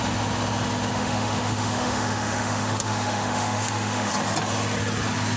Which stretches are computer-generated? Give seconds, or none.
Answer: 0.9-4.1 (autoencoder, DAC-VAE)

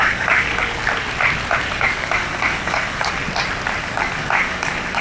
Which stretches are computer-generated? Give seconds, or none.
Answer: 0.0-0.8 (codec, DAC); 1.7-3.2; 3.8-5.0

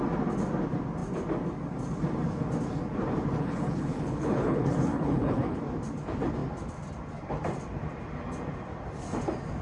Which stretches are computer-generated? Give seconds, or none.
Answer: 3.4-5.6 (codec, HILCodec)

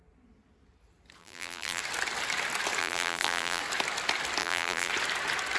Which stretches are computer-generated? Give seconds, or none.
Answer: 1.2-1.8 (vocoder, BigVGAN v2); 2.8-3.6; 4.4-4.9

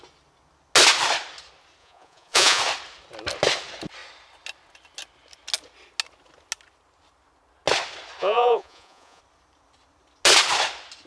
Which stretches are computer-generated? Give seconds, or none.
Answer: 1.8-2.6 (vocoder, Vocos); 8.2-9.2

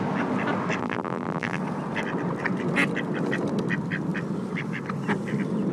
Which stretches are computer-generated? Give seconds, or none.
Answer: 0.8-1.6 (vocoder, BigVGAN v2)

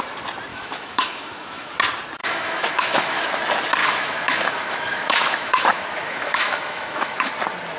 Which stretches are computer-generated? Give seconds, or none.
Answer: 0.5-1.7 (autoencoder, DAC-VAE); 2.2-3.2; 3.8-7.3

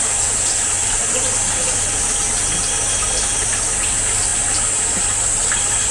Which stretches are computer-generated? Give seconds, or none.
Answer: none